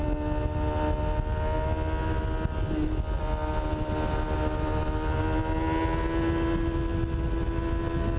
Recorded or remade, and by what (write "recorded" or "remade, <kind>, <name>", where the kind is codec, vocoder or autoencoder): recorded